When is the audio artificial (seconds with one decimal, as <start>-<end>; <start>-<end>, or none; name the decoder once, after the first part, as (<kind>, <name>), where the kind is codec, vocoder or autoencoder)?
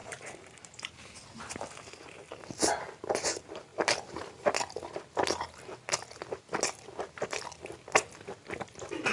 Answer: none